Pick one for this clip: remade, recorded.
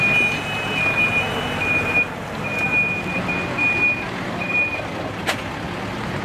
recorded